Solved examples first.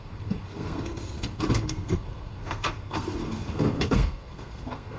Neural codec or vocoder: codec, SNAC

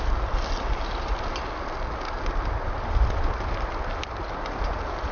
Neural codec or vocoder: none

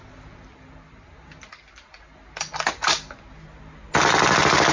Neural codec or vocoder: none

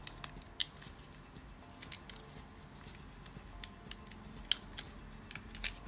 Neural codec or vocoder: none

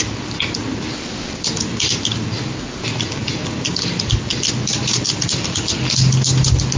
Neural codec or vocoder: none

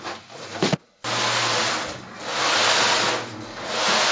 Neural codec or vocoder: none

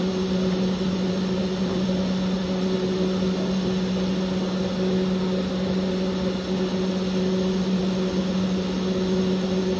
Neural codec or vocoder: none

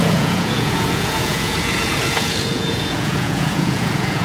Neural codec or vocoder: vocoder, Vocos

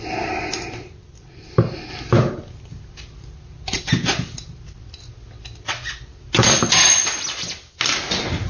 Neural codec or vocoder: none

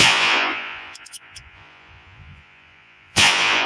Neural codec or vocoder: vocoder, Vocos